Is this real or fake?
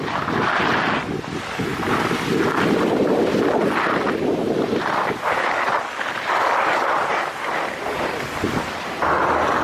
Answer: real